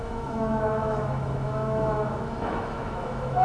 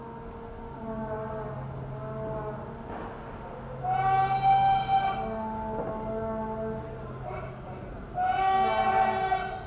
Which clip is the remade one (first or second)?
first